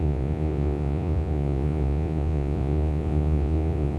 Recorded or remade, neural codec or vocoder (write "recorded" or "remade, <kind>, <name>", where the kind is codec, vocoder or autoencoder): remade, vocoder, Vocos